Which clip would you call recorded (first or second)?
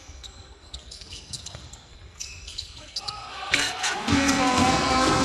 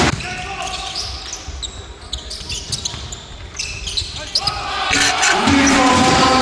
second